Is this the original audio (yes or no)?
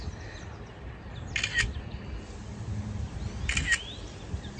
yes